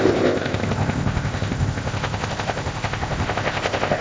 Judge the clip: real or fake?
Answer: fake